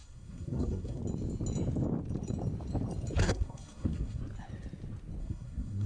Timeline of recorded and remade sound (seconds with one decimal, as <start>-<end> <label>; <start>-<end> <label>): 0.0-1.0 remade; 1.0-3.2 recorded; 3.2-4.2 remade; 4.2-5.2 recorded; 5.2-5.9 remade